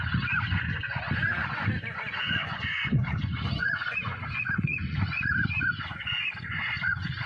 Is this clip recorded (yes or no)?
no